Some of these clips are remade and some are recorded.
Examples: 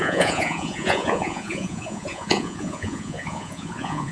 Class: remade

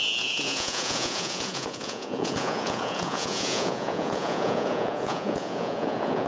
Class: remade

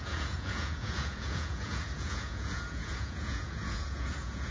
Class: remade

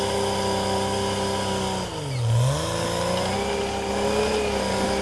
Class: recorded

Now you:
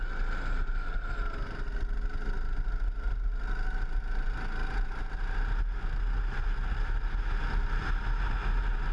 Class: recorded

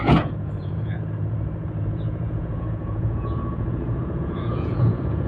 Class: remade